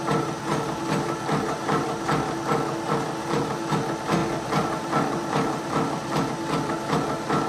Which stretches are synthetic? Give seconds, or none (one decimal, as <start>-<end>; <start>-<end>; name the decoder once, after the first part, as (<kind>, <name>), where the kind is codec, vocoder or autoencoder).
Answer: 0.5-2.1 (vocoder, BigVGAN v2); 3.2-3.7; 4.2-6.3